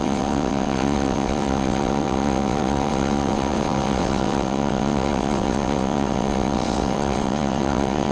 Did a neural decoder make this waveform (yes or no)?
yes